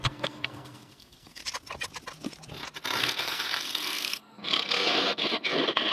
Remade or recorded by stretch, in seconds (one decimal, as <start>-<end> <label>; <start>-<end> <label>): 0.0-1.4 remade; 1.4-3.0 recorded; 3.0-5.9 remade